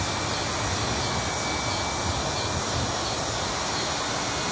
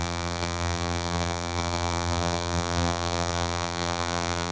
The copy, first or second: second